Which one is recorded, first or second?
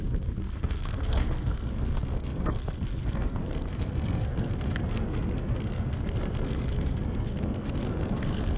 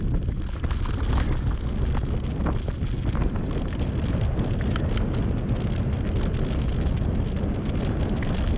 second